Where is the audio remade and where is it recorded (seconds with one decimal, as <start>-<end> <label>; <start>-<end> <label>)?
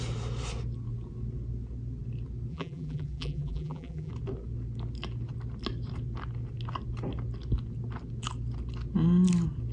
0.0-2.5 recorded; 2.5-4.1 remade; 4.1-9.7 recorded